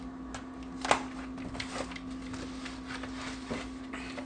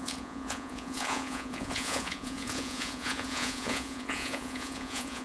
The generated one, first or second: second